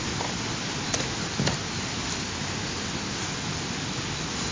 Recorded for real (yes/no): yes